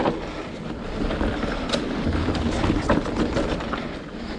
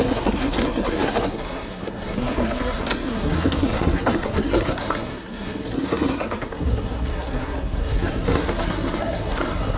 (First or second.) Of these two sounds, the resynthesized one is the second